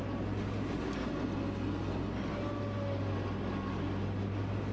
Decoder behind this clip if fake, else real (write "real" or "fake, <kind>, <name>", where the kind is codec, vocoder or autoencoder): real